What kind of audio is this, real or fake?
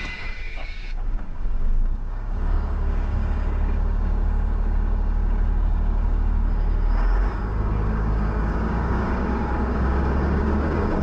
fake